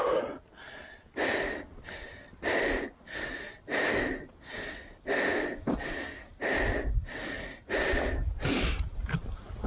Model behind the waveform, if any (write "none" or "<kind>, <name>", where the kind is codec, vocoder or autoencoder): none